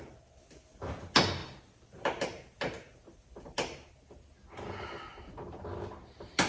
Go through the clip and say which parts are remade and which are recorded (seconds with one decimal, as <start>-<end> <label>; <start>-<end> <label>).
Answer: 0.0-6.5 recorded